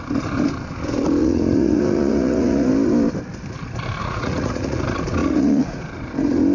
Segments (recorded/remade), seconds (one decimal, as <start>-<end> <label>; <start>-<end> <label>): 0.0-1.2 recorded; 1.2-2.7 remade; 2.7-4.0 recorded; 4.0-4.8 remade; 4.8-5.2 recorded; 5.2-5.8 remade; 5.8-6.5 recorded